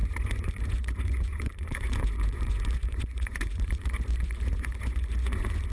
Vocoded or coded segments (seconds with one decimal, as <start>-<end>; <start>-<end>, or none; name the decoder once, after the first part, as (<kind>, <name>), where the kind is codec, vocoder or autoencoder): 0.0-5.7 (vocoder, Vocos)